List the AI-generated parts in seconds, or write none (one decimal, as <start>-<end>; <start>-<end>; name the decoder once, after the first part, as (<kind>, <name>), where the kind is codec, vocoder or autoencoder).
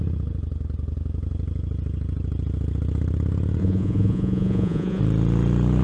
3.6-5.0 (vocoder, Vocos)